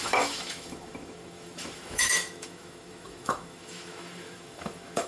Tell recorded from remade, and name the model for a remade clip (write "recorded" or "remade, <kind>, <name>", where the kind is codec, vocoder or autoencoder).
remade, autoencoder, DAC-VAE